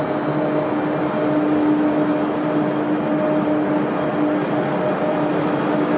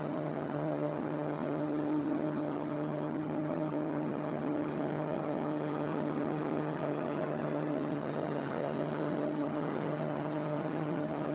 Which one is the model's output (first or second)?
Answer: second